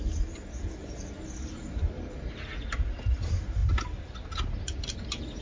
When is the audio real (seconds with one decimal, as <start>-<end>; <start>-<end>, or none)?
0.0-5.4